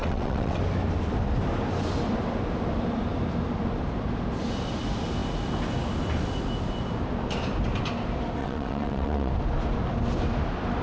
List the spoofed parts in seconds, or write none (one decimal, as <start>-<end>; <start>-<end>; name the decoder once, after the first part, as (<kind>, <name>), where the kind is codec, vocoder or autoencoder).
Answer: 0.0-0.6 (vocoder, WaveNeXt); 8.4-9.3